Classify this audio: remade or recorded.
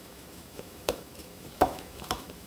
remade